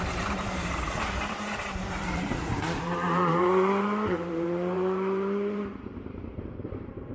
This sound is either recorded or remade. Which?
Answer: remade